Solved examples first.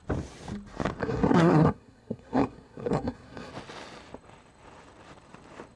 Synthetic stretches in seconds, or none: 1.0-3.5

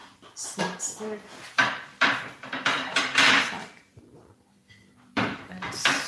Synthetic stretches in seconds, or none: 0.6-6.1

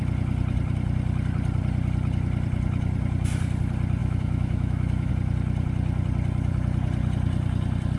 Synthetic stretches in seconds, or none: 4.0-5.1

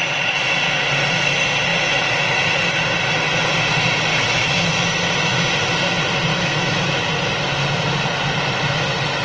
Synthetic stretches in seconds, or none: 4.1-4.7; 6.3-6.8